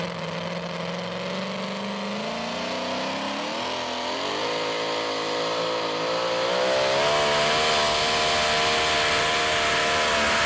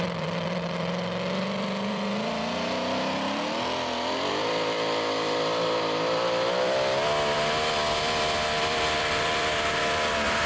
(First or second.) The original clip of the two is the first